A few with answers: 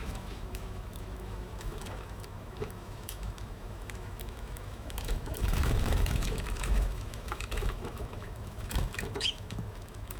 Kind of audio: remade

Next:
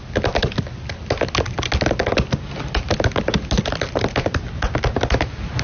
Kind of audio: recorded